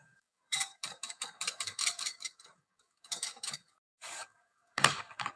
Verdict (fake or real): fake